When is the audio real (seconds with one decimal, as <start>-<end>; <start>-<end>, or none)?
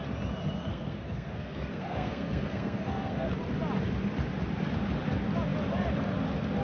0.0-0.7; 3.3-6.6